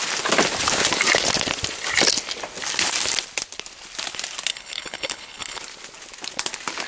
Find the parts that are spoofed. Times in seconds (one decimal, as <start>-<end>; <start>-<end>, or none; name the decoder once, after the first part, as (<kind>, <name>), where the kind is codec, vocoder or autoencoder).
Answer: 4.5-5.6 (codec, HILCodec)

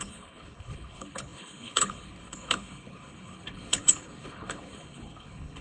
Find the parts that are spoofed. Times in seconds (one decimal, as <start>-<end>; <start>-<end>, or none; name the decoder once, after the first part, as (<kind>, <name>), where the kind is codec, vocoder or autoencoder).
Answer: 0.0-5.6 (codec, HILCodec)

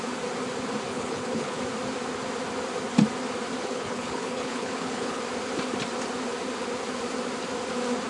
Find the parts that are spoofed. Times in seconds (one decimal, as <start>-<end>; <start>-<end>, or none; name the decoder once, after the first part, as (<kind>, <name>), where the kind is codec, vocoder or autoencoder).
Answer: 0.9-1.6 (codec, HILCodec); 3.6-5.2

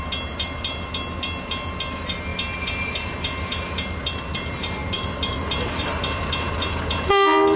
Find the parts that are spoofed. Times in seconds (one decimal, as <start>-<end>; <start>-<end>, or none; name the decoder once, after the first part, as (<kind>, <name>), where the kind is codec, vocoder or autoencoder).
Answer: none